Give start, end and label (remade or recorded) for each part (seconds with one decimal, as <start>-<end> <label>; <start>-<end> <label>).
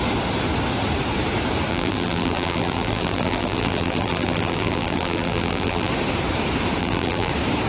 0.0-1.7 recorded; 1.7-5.9 remade; 5.9-6.8 recorded; 6.8-7.3 remade; 7.3-7.7 recorded